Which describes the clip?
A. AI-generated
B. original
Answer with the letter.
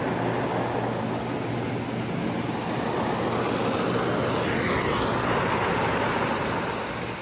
B